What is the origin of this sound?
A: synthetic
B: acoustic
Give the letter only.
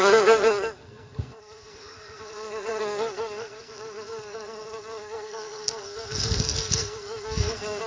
A